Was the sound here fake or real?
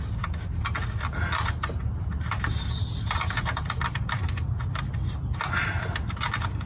real